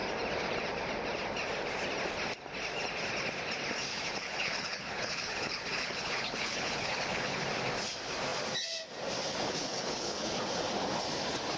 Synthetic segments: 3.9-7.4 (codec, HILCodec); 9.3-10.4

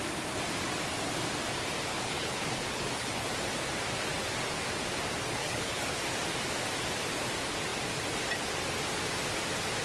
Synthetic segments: 1.9-3.3 (codec, HILCodec); 5.4-6.0

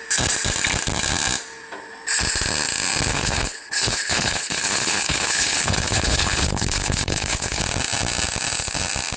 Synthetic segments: 3.1-7.6 (codec, HILCodec)

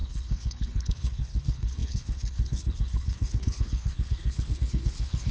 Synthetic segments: 0.0-5.3 (codec, HILCodec)

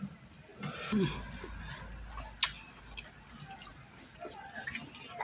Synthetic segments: none

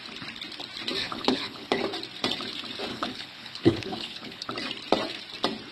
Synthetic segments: 1.0-1.8 (codec, HILCodec); 2.9-4.5